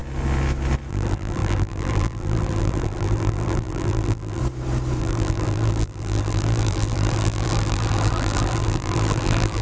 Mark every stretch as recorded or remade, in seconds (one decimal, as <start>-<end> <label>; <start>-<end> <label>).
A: 0.0-0.9 recorded; 0.9-4.4 remade; 4.4-5.0 recorded; 5.0-9.6 remade